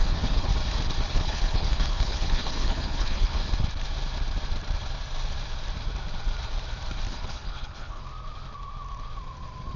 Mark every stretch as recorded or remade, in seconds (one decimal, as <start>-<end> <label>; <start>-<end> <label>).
0.0-0.5 remade; 0.5-1.1 recorded; 1.1-3.4 remade; 3.4-7.1 recorded; 7.1-8.0 remade; 8.0-9.8 recorded